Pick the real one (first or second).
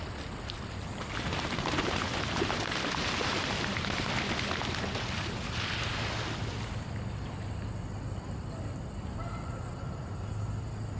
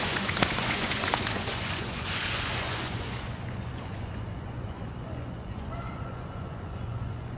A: first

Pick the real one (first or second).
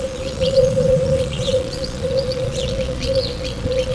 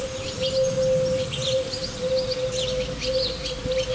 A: second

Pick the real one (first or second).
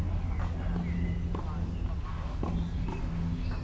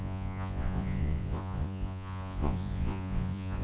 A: first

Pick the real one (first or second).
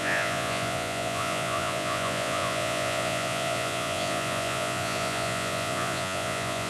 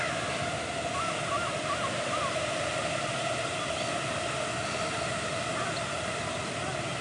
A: second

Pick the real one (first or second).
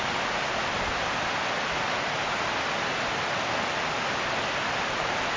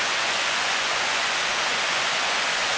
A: first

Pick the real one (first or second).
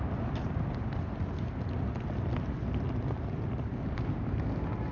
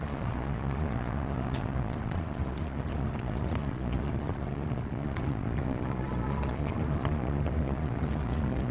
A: first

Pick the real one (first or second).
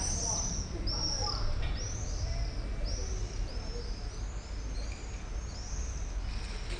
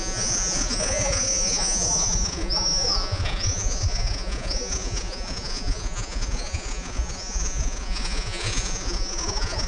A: first